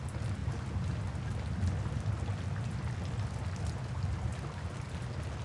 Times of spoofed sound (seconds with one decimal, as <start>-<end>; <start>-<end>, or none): none

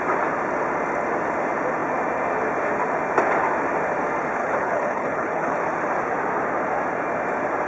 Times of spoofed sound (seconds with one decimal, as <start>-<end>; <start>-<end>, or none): 4.4-5.6

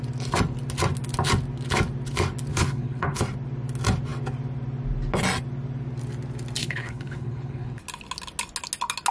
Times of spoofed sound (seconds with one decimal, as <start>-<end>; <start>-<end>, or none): 2.5-3.2; 6.6-7.8